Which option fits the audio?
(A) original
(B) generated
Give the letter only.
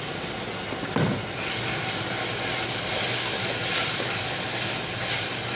A